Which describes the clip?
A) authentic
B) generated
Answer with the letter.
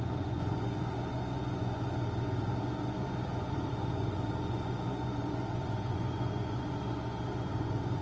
B